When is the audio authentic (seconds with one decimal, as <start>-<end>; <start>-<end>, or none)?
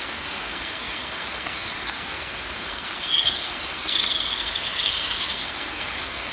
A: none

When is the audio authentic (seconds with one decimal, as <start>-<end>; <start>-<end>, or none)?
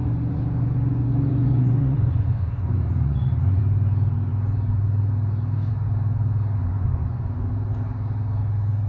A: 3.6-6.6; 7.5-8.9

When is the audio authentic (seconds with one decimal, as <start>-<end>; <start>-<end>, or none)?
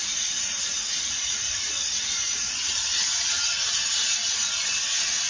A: 3.2-5.3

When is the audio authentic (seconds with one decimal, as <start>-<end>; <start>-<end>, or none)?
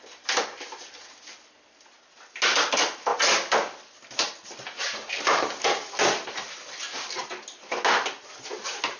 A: 0.0-9.0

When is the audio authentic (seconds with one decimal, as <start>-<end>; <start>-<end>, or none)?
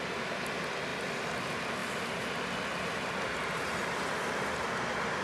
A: 0.0-5.2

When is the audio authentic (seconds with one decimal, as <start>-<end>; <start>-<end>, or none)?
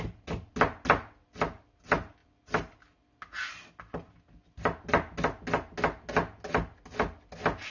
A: 0.0-7.7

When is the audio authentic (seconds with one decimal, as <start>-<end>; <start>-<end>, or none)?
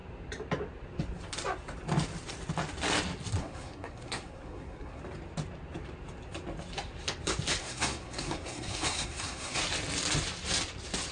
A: 0.0-3.4; 5.0-7.6; 9.6-11.1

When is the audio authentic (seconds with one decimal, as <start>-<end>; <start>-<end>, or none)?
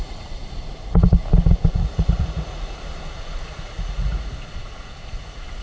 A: none